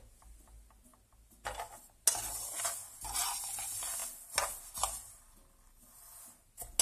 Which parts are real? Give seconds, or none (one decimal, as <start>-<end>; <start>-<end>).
0.0-6.8